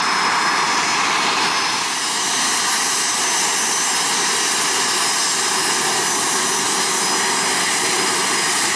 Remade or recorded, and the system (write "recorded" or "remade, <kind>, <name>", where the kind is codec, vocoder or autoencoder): recorded